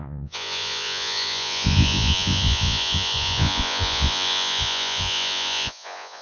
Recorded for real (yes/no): no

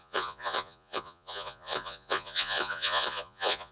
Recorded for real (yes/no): no